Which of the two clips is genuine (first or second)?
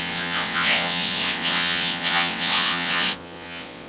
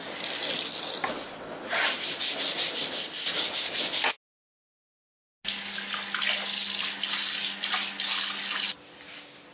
second